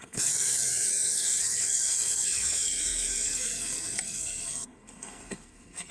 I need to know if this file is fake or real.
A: fake